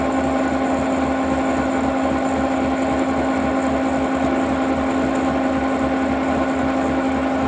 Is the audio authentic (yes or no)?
yes